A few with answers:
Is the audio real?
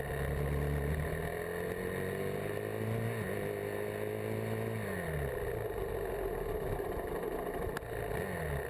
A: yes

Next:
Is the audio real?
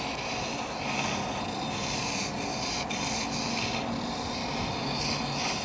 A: yes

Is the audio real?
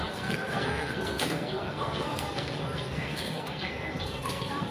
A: no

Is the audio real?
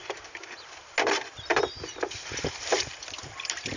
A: yes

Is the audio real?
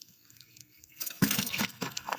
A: no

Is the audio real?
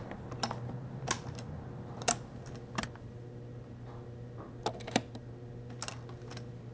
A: yes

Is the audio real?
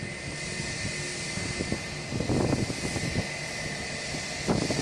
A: yes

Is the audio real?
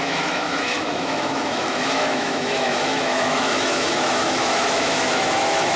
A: no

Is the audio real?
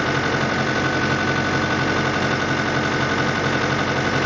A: yes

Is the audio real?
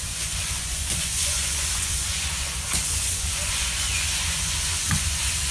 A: no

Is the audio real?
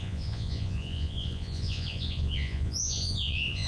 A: no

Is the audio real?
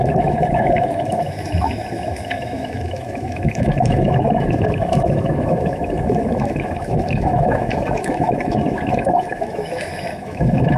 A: no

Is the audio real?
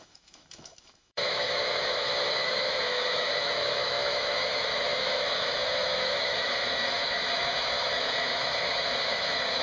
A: no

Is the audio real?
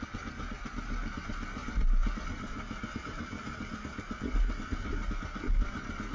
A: yes